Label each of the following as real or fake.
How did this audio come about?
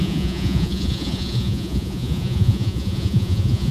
fake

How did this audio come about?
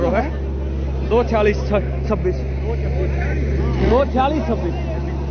real